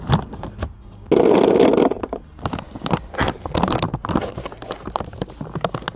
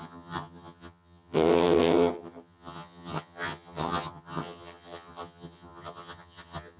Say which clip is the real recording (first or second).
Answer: first